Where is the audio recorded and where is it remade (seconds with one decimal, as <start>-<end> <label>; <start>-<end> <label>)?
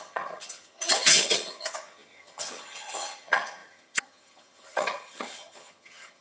0.0-6.2 remade